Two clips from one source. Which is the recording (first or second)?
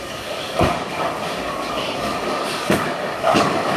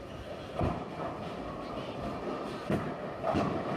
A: second